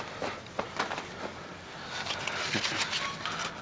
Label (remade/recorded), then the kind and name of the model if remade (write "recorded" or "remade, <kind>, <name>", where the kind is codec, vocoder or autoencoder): recorded